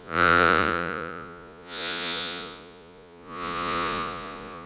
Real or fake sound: fake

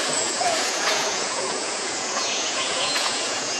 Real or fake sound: fake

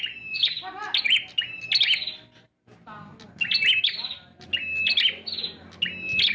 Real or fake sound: real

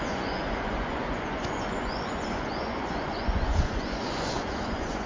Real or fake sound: fake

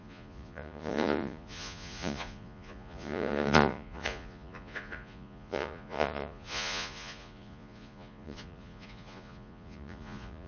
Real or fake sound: fake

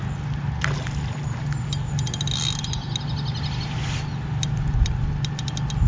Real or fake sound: real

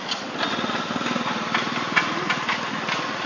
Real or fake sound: real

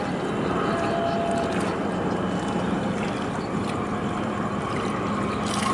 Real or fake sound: real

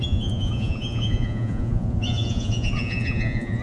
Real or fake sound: fake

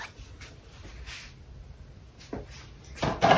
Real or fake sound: real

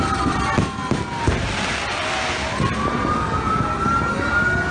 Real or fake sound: real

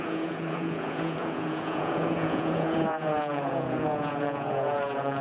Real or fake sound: fake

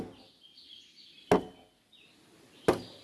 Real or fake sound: real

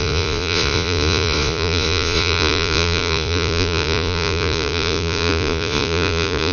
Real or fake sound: fake